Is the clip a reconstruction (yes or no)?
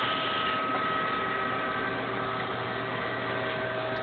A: no